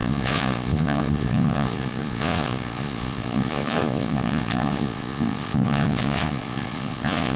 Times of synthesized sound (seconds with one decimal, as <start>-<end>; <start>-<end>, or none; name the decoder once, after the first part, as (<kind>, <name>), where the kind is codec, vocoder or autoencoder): 0.0-7.4 (vocoder, Vocos)